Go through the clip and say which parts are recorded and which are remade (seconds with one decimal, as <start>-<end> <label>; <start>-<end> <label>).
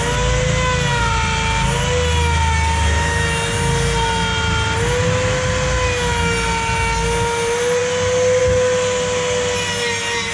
0.0-10.3 recorded